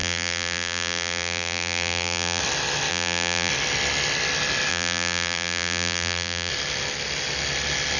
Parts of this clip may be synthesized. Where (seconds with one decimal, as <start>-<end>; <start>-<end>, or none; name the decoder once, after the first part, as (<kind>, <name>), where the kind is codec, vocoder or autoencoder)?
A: 0.0-2.4 (vocoder, BigVGAN v2); 2.9-3.5; 4.7-6.5